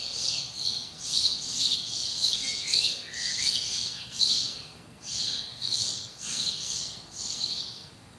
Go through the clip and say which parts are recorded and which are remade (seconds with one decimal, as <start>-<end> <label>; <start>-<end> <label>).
0.0-8.2 remade